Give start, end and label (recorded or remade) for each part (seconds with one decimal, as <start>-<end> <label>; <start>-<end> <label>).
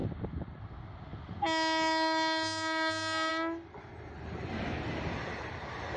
0.0-0.6 remade; 0.6-3.9 recorded; 3.9-4.5 remade; 4.5-6.0 recorded